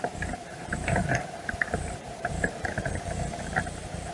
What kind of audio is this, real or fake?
fake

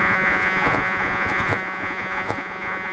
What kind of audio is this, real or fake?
fake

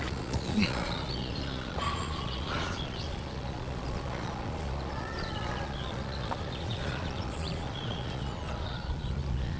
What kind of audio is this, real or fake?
fake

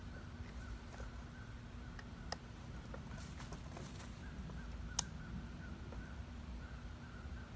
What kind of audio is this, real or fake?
real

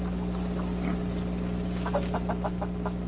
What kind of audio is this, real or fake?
real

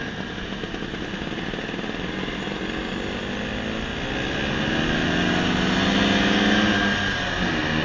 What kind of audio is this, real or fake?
real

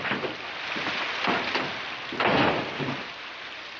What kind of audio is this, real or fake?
real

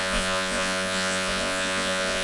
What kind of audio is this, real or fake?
fake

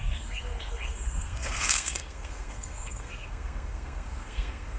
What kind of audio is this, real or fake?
fake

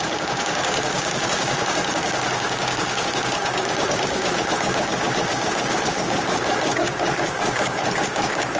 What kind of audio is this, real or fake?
fake